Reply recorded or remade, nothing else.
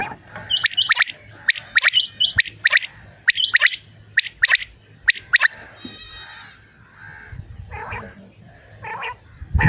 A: recorded